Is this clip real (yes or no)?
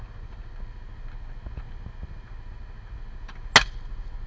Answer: yes